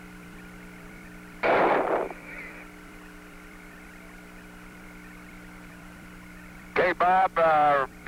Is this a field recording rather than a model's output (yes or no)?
no